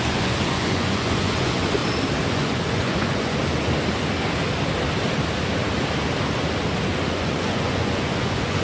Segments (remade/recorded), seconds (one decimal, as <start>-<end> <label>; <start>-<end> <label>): 0.0-1.8 remade; 1.8-2.3 recorded; 2.3-3.4 remade; 3.4-7.1 recorded; 7.1-8.6 remade